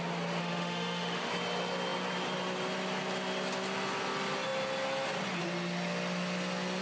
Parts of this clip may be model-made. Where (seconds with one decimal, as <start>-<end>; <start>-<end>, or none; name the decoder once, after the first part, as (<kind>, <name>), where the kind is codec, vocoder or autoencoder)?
0.4-1.3 (autoencoder, DAC-VAE)